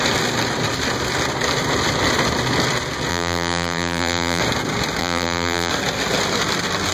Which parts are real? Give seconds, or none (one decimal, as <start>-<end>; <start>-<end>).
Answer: 0.0-3.1; 4.4-5.0; 5.7-6.9